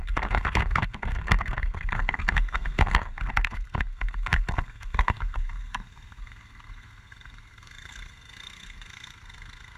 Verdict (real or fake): fake